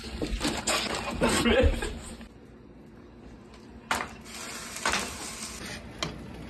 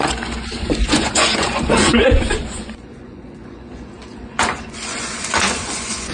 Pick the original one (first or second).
first